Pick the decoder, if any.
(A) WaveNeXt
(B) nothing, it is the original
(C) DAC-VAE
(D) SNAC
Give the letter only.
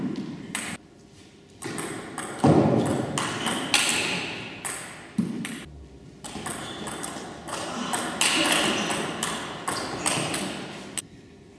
B